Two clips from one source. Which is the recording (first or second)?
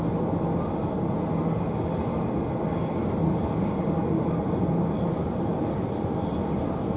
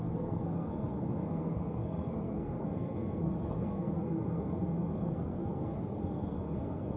first